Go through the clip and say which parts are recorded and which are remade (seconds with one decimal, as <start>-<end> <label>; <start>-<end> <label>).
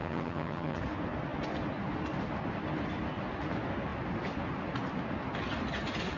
0.0-0.8 remade; 0.8-6.2 recorded